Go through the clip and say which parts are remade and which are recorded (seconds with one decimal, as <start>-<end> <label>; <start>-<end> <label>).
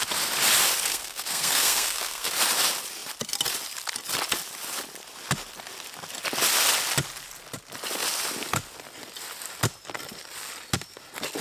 0.0-0.9 recorded; 0.9-2.3 remade; 2.3-11.4 recorded